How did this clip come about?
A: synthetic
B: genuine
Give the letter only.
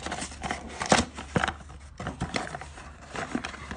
B